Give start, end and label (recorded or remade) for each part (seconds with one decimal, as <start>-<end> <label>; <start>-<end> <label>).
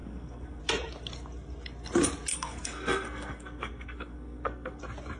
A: 0.0-0.6 remade; 0.6-2.3 recorded; 2.3-4.8 remade; 4.8-5.2 recorded